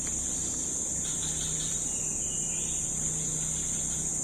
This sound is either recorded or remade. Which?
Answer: recorded